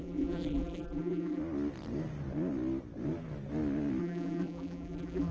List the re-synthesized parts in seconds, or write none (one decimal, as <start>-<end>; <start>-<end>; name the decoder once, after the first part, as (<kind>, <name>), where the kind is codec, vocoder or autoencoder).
0.0-1.4 (vocoder, BigVGAN v2); 4.0-5.3